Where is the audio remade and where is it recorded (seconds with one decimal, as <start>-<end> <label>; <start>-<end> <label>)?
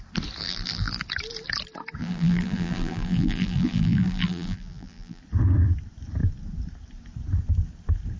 0.0-0.4 recorded; 0.4-1.0 remade; 1.0-2.0 recorded; 2.0-5.2 remade; 5.2-8.2 recorded